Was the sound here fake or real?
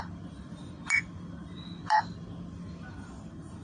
real